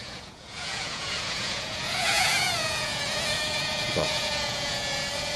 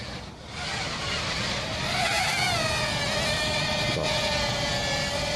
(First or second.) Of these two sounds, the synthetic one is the first